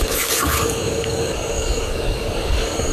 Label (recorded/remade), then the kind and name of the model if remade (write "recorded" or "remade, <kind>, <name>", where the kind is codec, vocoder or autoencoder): remade, codec, DAC